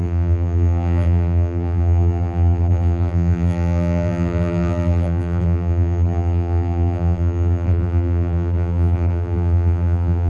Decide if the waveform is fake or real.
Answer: fake